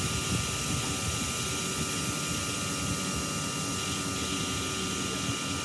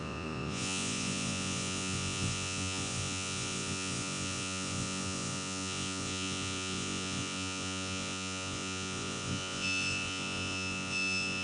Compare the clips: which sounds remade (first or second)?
second